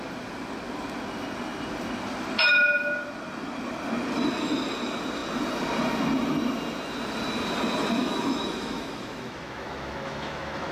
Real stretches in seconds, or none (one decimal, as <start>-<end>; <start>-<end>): 0.0-8.0